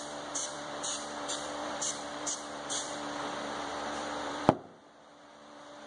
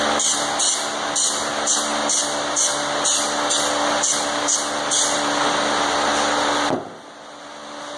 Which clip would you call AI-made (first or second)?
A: first